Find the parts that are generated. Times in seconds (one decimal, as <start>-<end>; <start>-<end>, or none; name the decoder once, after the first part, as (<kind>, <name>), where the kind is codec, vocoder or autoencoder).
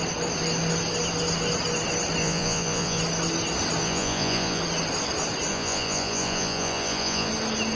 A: 2.2-3.0 (vocoder, Vocos); 3.8-4.6; 5.5-7.3